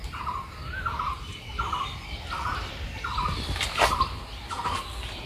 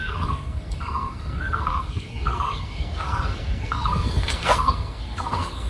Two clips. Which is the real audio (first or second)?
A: first